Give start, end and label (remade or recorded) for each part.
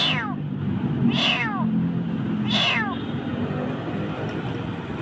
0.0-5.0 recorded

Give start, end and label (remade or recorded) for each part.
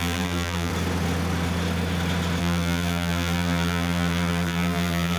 0.0-0.7 remade; 0.7-2.4 recorded; 2.4-5.2 remade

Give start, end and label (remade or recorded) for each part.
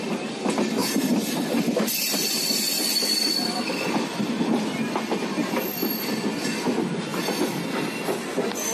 0.0-0.8 recorded; 0.8-6.0 remade; 6.0-7.1 recorded; 7.1-7.6 remade; 7.6-8.7 recorded